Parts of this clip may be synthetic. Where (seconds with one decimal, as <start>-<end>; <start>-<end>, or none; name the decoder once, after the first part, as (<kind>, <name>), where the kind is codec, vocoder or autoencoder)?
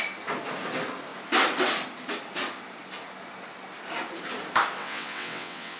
4.8-5.8 (vocoder, WaveNeXt)